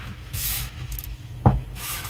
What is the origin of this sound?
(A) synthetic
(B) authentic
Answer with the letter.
A